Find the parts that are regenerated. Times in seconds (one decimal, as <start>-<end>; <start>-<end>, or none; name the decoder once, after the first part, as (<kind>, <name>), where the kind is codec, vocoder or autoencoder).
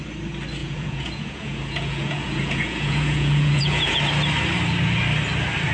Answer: 0.6-4.0 (vocoder, Vocos)